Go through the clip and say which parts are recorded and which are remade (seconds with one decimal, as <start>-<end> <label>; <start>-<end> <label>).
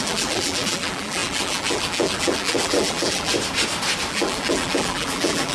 0.0-3.3 remade; 3.3-4.1 recorded; 4.1-5.5 remade